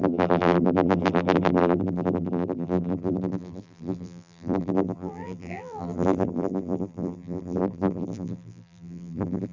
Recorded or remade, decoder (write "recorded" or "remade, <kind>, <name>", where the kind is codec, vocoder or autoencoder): remade, vocoder, BigVGAN v2